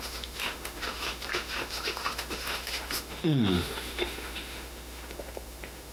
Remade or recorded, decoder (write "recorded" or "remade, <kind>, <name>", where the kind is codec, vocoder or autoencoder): remade, autoencoder, DAC-VAE